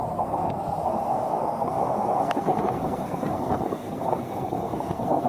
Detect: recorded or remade remade